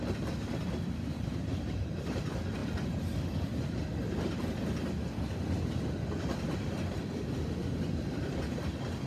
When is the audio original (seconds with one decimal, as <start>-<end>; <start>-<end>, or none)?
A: 2.6-6.6